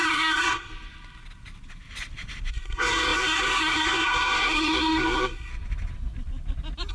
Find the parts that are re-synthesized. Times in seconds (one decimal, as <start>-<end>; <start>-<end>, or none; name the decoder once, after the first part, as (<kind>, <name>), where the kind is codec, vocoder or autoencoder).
0.0-0.7 (codec, SNAC); 2.5-5.5